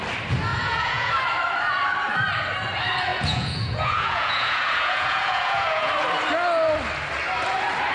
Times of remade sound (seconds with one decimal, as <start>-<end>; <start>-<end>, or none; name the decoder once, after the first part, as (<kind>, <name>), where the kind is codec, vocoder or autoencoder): 0.5-1.1 (vocoder, Vocos); 3.1-5.9